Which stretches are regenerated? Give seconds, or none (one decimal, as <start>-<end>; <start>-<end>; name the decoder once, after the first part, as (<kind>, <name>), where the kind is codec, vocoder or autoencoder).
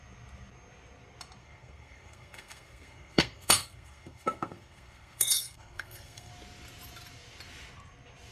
1.4-6.3 (codec, SNAC)